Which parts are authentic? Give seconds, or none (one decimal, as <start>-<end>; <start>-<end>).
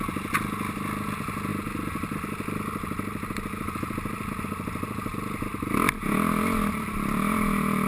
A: 0.0-7.9